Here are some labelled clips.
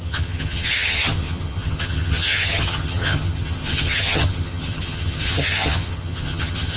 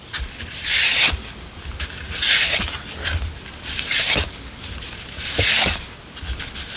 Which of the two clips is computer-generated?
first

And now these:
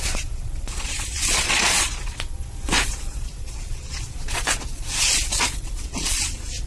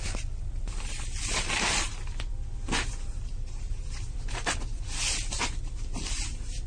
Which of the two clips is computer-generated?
first